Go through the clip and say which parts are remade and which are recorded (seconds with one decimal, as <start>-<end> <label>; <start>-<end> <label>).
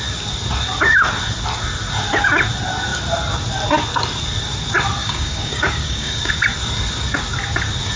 0.0-5.0 recorded; 5.0-6.3 remade; 6.3-8.0 recorded